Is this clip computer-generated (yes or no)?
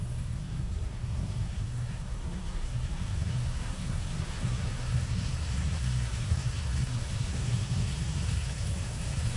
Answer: yes